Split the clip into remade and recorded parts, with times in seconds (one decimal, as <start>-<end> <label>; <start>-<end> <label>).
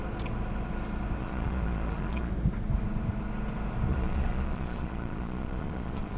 0.0-1.2 recorded; 1.2-2.3 remade; 2.3-3.9 recorded; 3.9-6.2 remade